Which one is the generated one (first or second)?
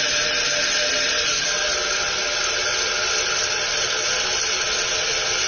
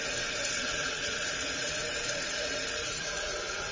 second